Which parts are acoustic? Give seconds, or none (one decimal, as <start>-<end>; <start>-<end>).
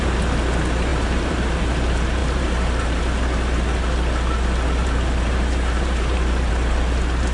0.0-0.9; 1.6-2.2; 3.0-4.8; 6.5-7.3